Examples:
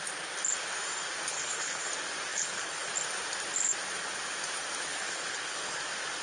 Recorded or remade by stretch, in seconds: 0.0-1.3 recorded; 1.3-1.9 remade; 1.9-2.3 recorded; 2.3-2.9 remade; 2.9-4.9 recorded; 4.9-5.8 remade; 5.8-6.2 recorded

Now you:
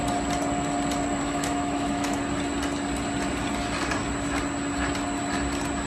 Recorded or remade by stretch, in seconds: 0.0-1.2 recorded; 1.2-2.2 remade; 2.2-5.9 recorded